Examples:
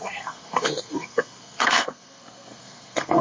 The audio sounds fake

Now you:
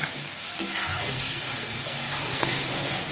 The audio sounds fake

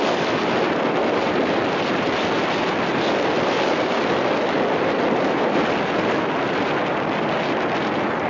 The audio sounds real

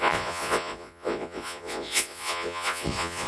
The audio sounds fake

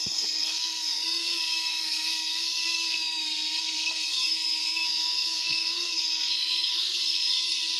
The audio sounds fake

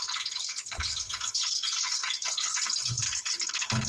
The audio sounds fake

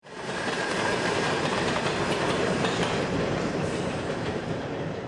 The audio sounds fake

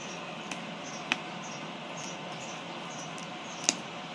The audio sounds real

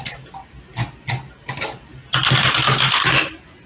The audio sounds real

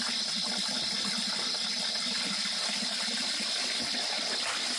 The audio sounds real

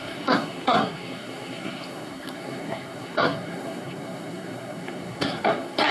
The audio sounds fake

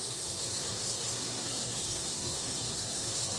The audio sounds fake